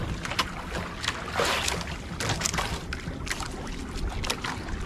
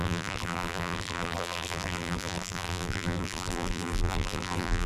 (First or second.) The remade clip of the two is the second